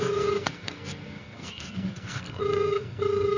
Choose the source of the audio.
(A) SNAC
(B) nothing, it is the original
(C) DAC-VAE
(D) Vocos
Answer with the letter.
A